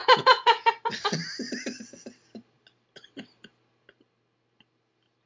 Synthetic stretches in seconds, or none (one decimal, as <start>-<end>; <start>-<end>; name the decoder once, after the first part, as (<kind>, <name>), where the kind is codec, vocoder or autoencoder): 0.0-0.7 (vocoder, Vocos)